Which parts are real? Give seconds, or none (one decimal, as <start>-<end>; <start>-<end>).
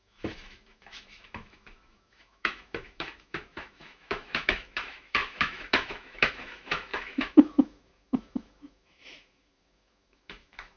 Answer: none